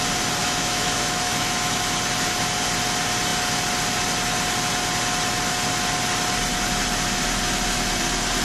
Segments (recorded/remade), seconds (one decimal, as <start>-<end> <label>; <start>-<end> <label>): 0.0-0.4 recorded; 0.4-1.8 remade; 1.8-8.4 recorded